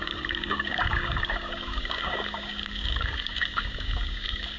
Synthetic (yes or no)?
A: yes